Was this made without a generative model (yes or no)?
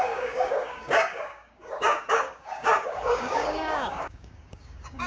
no